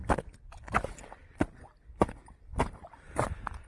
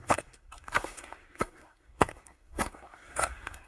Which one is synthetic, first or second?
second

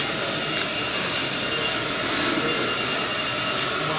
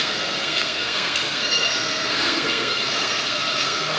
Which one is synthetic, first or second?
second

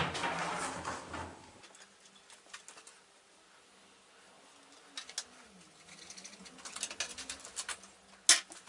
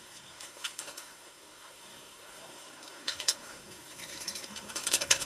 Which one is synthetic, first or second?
second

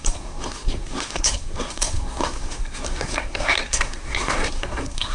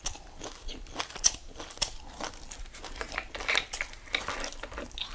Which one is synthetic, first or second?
first